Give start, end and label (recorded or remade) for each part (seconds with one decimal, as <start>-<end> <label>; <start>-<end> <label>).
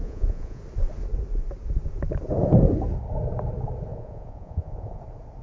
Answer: 0.0-0.6 remade; 0.6-3.9 recorded; 3.9-5.0 remade; 5.0-5.4 recorded